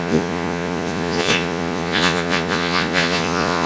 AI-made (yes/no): yes